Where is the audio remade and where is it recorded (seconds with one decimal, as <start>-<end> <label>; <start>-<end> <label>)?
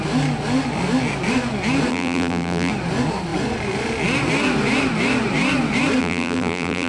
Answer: 0.0-1.9 recorded; 1.9-2.7 remade; 2.7-6.0 recorded; 6.0-6.9 remade